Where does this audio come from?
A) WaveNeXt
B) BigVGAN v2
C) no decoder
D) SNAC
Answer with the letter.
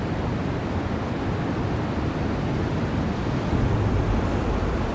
C